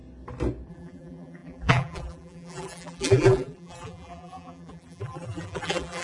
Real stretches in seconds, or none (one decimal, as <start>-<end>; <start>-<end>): 0.0-0.7